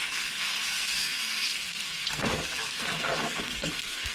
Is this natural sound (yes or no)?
no